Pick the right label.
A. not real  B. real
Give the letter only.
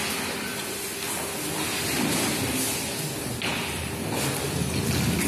B